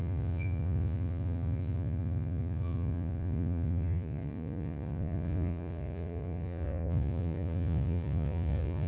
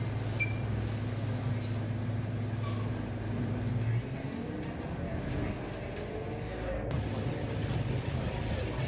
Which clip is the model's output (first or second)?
first